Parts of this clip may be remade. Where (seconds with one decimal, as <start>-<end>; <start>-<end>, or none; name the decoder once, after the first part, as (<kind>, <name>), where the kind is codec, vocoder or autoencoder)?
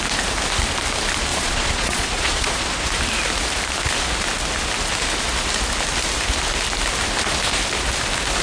1.3-2.9 (vocoder, Vocos)